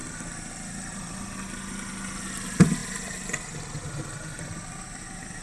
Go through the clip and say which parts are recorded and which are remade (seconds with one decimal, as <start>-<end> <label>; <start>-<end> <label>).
0.0-1.2 remade; 1.2-5.4 recorded